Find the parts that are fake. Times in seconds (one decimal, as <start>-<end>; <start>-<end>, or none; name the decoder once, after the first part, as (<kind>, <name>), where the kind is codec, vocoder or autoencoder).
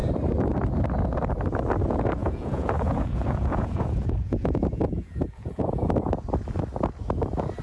2.2-6.1 (vocoder, Vocos)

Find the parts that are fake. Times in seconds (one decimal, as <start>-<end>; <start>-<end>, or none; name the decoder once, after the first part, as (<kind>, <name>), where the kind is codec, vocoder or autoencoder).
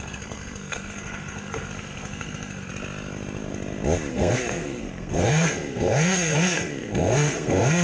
0.0-2.7 (codec, SNAC); 4.1-7.8